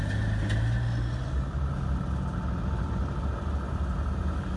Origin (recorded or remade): recorded